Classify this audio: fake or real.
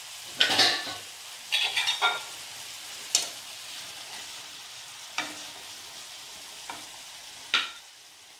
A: real